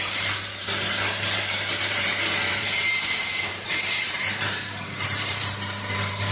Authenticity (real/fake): fake